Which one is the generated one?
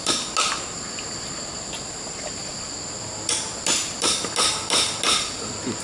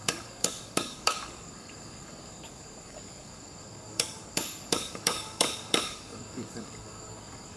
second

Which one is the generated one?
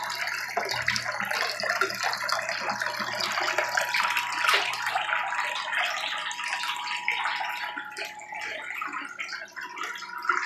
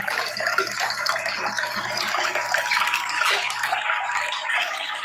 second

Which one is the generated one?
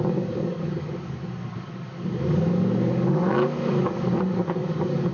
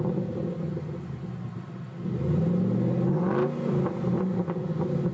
first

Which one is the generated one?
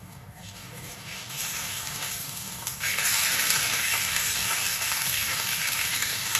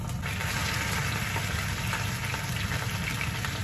first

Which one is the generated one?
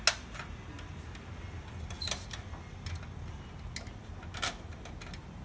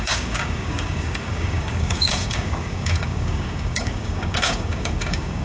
second